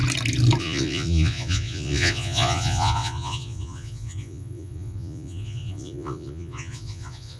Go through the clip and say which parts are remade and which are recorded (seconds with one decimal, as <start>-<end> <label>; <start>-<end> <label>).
0.0-0.6 recorded; 0.6-7.4 remade